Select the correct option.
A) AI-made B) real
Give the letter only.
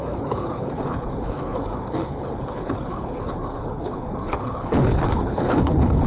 A